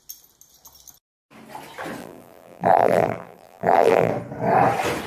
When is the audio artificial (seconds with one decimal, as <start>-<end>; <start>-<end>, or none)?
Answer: 2.0-4.1